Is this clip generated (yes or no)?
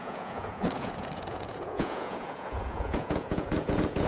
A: yes